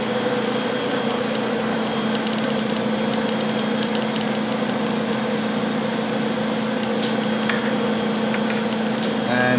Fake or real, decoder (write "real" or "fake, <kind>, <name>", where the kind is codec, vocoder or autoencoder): real